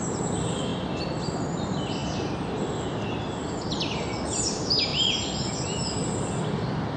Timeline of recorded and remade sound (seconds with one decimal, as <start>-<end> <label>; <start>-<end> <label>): 0.0-7.0 recorded